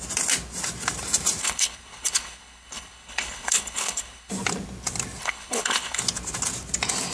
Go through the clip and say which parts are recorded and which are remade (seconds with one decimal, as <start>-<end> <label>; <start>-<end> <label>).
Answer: 0.0-1.4 recorded; 1.4-4.3 remade; 4.3-5.2 recorded; 5.2-6.0 remade; 6.0-7.1 recorded